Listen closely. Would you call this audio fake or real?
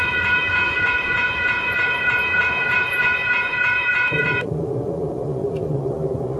fake